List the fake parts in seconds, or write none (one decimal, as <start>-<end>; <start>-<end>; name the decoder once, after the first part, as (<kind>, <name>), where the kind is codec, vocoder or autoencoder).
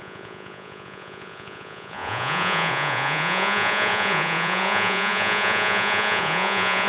0.0-6.9 (vocoder, Vocos)